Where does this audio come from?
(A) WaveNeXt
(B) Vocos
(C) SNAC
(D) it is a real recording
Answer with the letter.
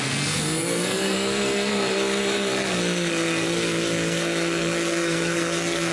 C